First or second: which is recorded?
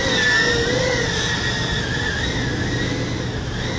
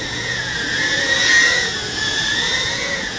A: first